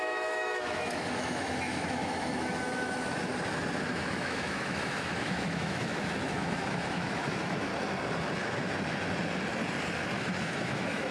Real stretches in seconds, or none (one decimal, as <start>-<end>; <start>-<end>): 3.3-3.9; 7.7-10.4